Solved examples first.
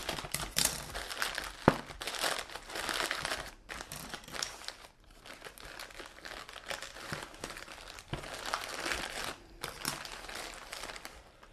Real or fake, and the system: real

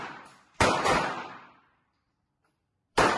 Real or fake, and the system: fake, vocoder, BigVGAN v2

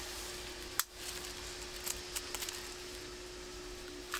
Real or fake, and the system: real